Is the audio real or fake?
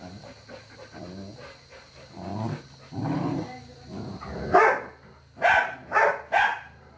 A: real